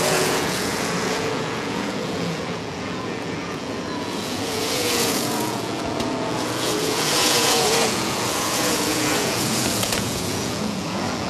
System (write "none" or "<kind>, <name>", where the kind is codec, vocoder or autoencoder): vocoder, Vocos